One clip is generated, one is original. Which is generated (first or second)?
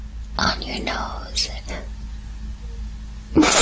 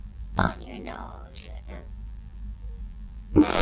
second